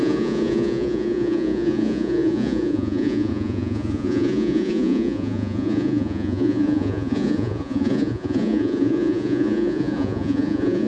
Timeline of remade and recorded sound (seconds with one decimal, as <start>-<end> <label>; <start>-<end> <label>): 0.0-10.9 remade